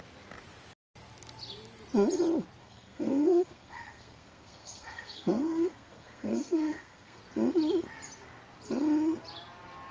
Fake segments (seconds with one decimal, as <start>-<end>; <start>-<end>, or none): 2.6-7.2